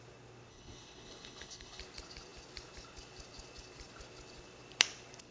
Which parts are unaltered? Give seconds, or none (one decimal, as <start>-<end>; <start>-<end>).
0.0-0.5; 1.8-5.3